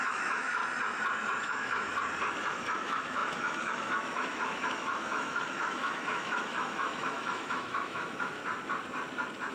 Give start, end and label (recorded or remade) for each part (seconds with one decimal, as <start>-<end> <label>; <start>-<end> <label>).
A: 0.0-0.6 remade; 0.6-1.4 recorded; 1.4-1.9 remade; 1.9-2.4 recorded; 2.4-8.4 remade; 8.4-9.5 recorded